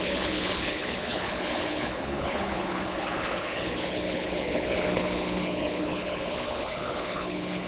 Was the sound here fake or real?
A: fake